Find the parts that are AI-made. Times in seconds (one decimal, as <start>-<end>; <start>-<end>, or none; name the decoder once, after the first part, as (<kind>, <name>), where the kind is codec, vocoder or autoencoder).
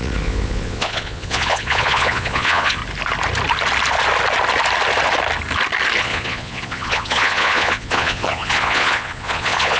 0.0-2.8 (vocoder, Vocos); 6.0-9.8